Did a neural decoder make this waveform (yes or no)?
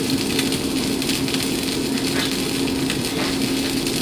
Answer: no